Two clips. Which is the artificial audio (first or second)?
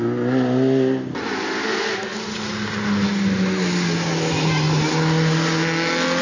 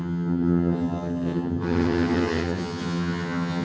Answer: second